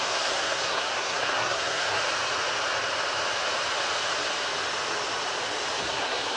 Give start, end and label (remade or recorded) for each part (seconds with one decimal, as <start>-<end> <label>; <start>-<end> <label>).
0.0-2.0 remade; 2.0-5.8 recorded; 5.8-6.4 remade